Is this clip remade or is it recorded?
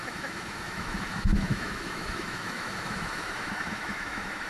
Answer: remade